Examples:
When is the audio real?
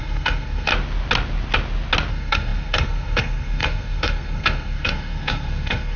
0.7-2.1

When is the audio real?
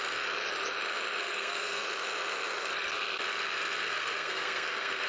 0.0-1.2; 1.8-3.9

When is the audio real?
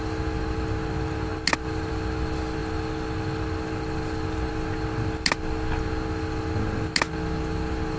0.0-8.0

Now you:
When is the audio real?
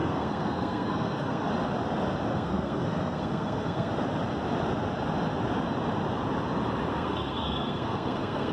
1.5-2.3; 3.9-6.9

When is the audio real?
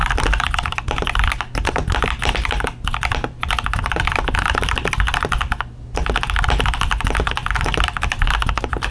0.0-8.9